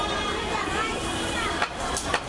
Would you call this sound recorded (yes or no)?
yes